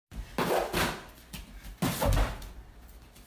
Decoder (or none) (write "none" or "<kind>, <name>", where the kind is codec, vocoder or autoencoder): none